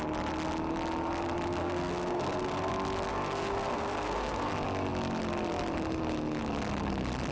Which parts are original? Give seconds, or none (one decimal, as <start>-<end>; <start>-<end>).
0.0-1.6; 2.7-3.1; 4.5-7.3